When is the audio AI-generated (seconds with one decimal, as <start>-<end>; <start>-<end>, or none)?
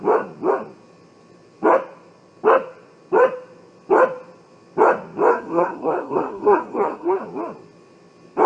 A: 5.3-7.2